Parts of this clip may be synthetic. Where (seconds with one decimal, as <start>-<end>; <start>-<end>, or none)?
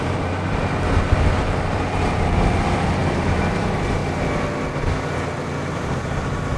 0.0-4.0; 5.7-6.6